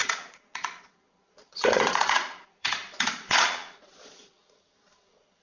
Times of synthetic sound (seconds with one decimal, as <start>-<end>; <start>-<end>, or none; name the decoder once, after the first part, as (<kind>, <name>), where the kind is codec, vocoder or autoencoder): 0.0-5.4 (vocoder, Vocos)